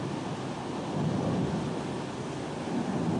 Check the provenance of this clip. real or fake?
real